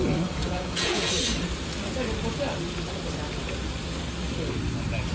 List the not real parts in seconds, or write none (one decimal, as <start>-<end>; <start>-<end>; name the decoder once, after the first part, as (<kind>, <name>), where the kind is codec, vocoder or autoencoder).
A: 0.4-1.1 (vocoder, Vocos)

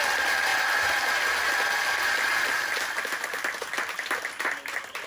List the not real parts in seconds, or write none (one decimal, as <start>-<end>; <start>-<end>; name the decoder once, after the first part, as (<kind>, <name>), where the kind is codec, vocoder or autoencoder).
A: none

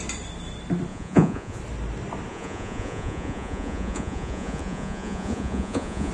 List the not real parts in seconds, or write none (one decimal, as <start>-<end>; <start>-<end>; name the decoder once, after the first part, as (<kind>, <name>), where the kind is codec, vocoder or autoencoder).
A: 0.9-1.6 (vocoder, Vocos); 2.3-6.1